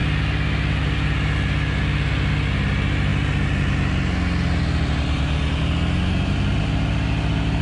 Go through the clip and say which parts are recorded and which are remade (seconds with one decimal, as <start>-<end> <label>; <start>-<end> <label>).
0.0-7.6 recorded